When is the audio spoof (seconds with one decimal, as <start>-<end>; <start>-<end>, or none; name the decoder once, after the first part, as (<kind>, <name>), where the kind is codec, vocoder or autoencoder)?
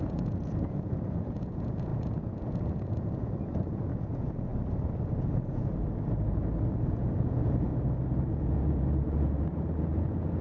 0.0-4.5 (vocoder, Vocos); 5.3-5.7; 6.7-7.7; 8.3-10.4